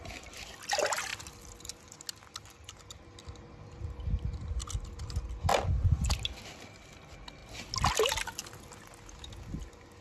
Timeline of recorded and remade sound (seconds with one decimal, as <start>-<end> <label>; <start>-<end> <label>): 0.0-10.0 recorded